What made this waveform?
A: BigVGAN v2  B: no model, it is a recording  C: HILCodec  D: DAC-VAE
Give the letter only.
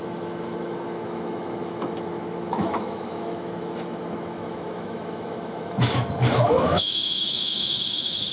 D